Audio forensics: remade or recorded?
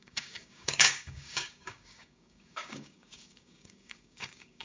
remade